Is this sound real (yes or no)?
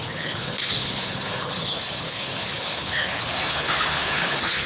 no